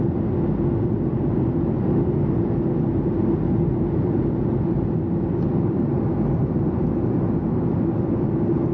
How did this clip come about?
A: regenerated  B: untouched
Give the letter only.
B